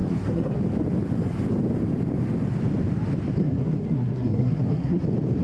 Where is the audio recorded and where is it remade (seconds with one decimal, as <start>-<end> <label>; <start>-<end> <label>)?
0.0-0.6 remade; 0.6-3.4 recorded; 3.4-5.0 remade; 5.0-5.4 recorded